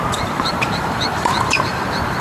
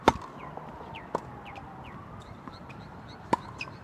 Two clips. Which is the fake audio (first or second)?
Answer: first